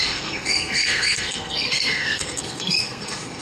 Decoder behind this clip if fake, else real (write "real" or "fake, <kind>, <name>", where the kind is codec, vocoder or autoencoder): fake, codec, SNAC